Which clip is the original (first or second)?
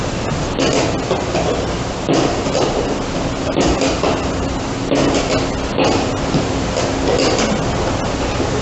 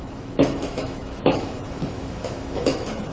first